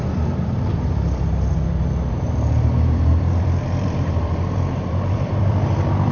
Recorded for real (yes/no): no